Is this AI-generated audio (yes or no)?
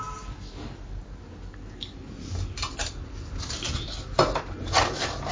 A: no